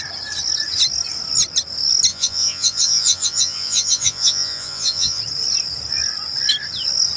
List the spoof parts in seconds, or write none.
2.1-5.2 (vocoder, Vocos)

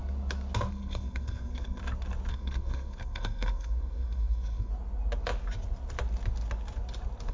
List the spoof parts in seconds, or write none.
0.7-1.8 (codec, SNAC); 2.3-4.7

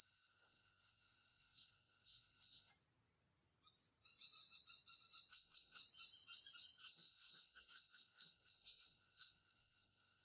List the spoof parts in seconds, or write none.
0.0-2.7 (codec, SNAC); 5.3-5.8; 6.8-10.2

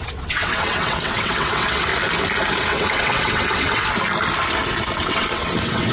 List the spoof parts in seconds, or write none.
0.0-1.9 (vocoder, WaveNeXt); 2.5-3.8; 5.0-5.9

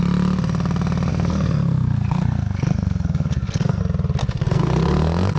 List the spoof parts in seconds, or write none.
1.1-3.8 (codec, SNAC); 4.2-5.4

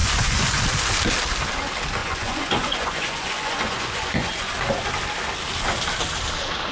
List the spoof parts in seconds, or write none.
0.0-0.6 (vocoder, Vocos); 2.0-4.5

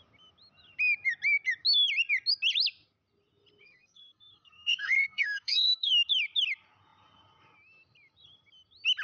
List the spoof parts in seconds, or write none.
3.6-5.9 (codec, SNAC)